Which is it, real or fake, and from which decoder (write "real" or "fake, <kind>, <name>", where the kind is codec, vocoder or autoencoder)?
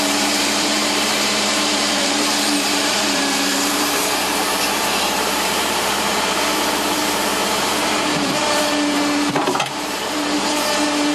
fake, vocoder, BigVGAN v2